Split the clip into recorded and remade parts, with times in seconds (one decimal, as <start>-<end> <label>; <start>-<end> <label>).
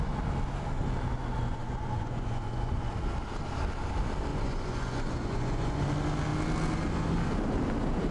0.0-1.2 recorded; 1.2-2.9 remade; 2.9-4.3 recorded; 4.3-5.8 remade; 5.8-8.1 recorded